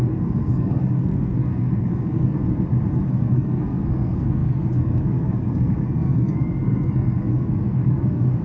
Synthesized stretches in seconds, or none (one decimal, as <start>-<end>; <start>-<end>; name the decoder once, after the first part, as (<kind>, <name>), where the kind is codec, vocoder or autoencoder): 0.0-2.4 (codec, SNAC); 3.1-8.4